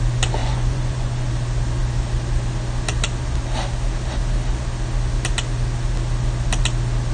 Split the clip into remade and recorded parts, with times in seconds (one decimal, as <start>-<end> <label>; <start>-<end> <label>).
0.0-0.4 recorded; 0.4-1.3 remade; 1.3-7.1 recorded